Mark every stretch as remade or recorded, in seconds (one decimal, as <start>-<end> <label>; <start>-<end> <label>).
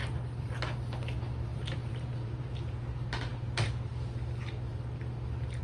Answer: 0.0-1.5 recorded; 1.5-2.5 remade; 2.5-5.6 recorded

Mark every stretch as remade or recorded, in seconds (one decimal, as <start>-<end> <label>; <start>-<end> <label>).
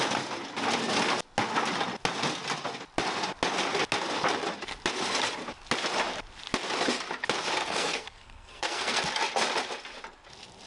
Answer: 0.0-7.6 recorded; 7.6-9.0 remade; 9.0-10.7 recorded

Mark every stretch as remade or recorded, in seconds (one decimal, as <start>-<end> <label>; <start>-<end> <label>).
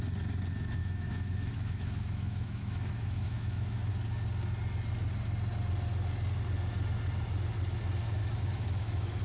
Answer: 0.0-0.8 recorded; 0.8-3.9 remade; 3.9-8.2 recorded; 8.2-9.2 remade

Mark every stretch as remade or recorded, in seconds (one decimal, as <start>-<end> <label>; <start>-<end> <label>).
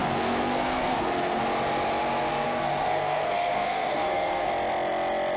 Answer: 0.0-1.4 remade; 1.4-2.3 recorded; 2.3-4.5 remade; 4.5-5.4 recorded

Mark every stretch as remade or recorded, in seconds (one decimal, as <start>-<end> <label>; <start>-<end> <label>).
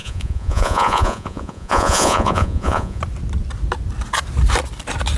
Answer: 0.0-3.0 remade; 3.0-5.2 recorded